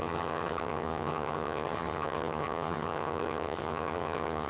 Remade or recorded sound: remade